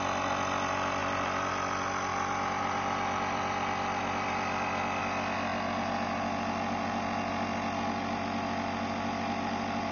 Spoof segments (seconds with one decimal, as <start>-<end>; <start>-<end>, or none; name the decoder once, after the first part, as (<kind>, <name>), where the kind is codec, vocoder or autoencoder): 1.0-1.5 (vocoder, BigVGAN v2); 2.1-5.0